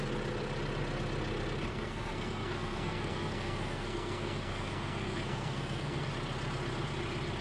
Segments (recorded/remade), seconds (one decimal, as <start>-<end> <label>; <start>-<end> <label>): 0.0-1.7 recorded; 1.7-6.1 remade; 6.1-7.4 recorded